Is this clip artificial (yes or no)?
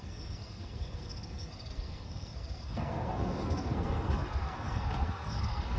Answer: yes